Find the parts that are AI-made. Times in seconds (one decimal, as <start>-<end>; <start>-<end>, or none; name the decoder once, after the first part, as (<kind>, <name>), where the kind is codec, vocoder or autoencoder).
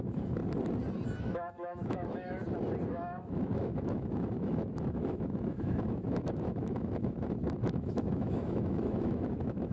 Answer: 0.0-0.4 (autoencoder, DAC-VAE); 1.2-2.4; 2.9-9.7